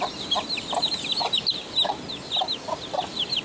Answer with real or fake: real